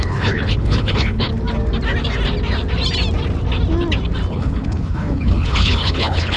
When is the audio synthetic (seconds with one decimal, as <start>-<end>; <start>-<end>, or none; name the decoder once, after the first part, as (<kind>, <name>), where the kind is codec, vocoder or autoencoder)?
0.0-1.3 (codec, HILCodec); 4.3-6.4